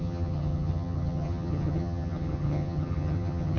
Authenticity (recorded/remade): remade